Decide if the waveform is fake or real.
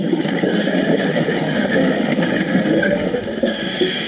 fake